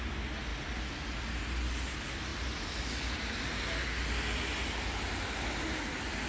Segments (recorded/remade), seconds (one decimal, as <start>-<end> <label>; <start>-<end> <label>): 0.0-6.3 recorded